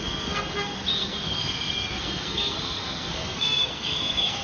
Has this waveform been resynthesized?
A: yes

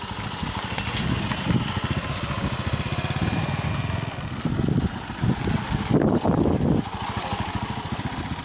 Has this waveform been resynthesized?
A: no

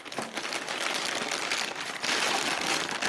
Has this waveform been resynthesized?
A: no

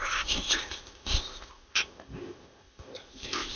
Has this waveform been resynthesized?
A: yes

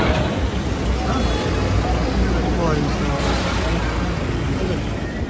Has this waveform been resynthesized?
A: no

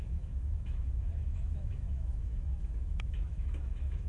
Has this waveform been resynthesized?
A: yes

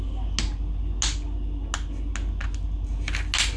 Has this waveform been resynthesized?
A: no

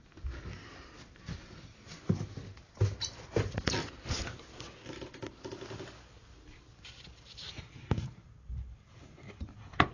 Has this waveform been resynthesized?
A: no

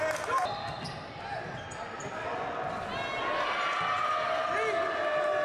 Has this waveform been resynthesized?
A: no